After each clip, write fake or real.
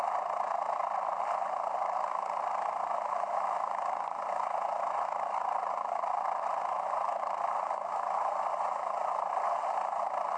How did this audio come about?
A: real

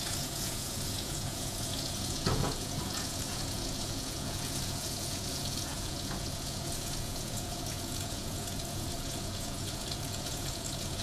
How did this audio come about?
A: fake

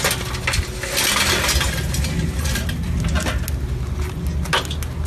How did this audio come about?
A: real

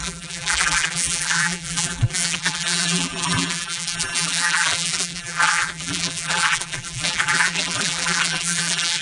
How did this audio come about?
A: fake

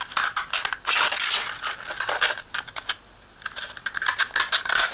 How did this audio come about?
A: real